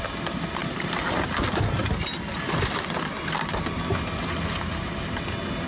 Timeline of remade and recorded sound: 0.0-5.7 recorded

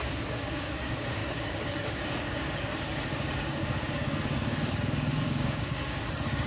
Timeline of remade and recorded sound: 0.0-6.5 remade

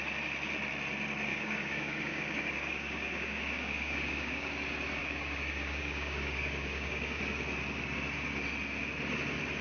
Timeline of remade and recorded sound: 0.0-1.3 recorded; 1.3-4.5 remade; 4.5-5.0 recorded; 5.0-7.2 remade; 7.2-9.6 recorded

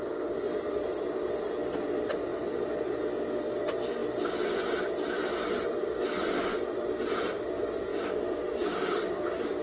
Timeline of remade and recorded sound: 0.0-7.9 recorded; 7.9-9.6 remade